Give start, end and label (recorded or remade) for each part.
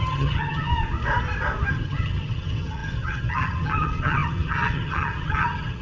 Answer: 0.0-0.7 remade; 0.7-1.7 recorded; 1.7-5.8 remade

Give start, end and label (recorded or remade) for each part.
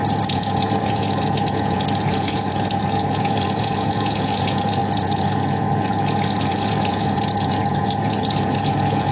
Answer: 0.0-9.1 remade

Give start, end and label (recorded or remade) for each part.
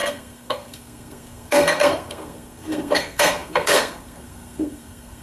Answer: 0.0-5.2 remade